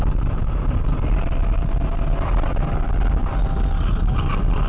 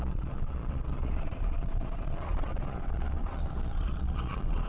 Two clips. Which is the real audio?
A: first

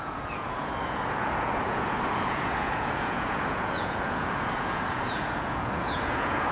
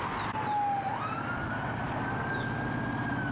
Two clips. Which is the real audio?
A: second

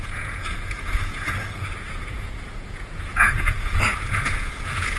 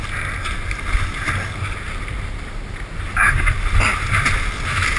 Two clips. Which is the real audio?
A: second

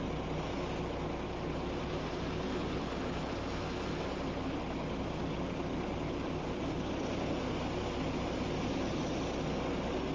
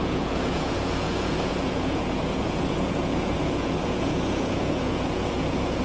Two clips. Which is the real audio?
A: first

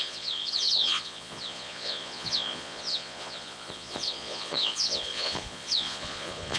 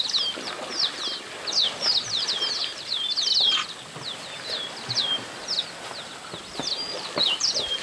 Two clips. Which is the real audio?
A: second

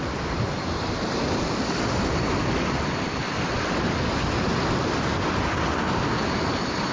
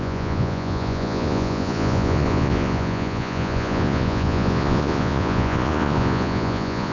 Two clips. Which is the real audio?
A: first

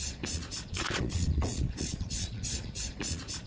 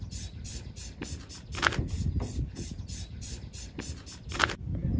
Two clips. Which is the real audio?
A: second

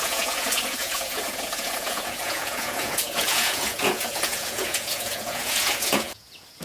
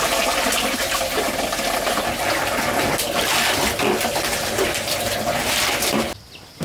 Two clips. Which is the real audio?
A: second